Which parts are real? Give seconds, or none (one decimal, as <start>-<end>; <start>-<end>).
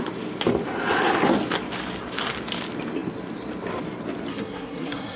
0.0-4.3